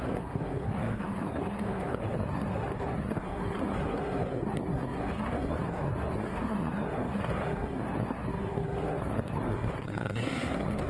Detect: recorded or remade remade